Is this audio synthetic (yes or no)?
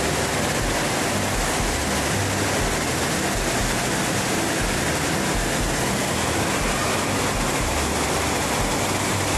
no